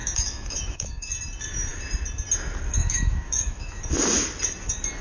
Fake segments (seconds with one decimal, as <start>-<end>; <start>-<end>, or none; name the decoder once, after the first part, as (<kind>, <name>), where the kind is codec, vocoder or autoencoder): 0.0-1.1 (autoencoder, DAC-VAE); 2.8-3.8